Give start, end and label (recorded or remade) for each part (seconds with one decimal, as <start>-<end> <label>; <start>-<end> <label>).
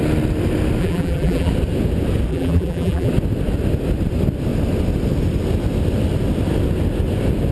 0.0-0.8 recorded; 0.8-1.5 remade; 1.5-2.3 recorded; 2.3-3.1 remade; 3.1-7.5 recorded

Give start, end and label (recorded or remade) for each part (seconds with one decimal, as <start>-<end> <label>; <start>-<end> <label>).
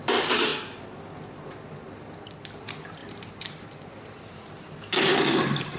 0.0-0.5 remade; 0.5-2.6 recorded; 2.6-5.8 remade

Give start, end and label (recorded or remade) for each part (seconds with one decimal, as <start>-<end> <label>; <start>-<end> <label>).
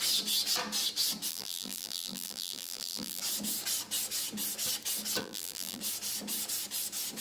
0.0-1.3 recorded; 1.3-3.2 remade; 3.2-5.2 recorded; 5.2-5.8 remade; 5.8-7.2 recorded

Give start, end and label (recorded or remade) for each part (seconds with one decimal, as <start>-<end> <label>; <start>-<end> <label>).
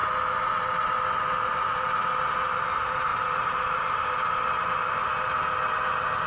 0.0-3.1 recorded; 3.1-4.3 remade; 4.3-6.3 recorded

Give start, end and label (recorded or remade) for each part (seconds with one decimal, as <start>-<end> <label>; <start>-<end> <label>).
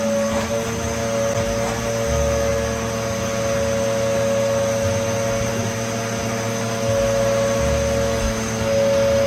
0.0-9.3 recorded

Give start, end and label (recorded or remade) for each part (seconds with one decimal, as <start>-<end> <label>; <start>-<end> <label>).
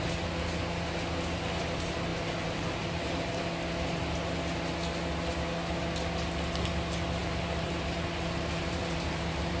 0.0-2.1 recorded; 2.1-3.3 remade; 3.3-7.2 recorded; 7.2-9.6 remade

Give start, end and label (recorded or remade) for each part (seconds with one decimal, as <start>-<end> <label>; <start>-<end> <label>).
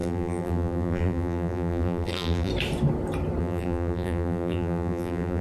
0.0-2.5 remade; 2.5-3.4 recorded; 3.4-5.4 remade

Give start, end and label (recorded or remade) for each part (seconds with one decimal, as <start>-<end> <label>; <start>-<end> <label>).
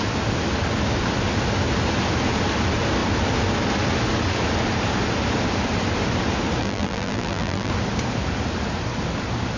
0.0-6.6 recorded; 6.6-7.7 remade; 7.7-9.6 recorded